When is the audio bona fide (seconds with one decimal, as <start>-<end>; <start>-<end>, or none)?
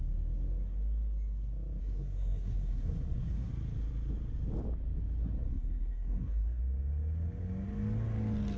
0.0-1.8; 3.5-5.2; 6.6-8.6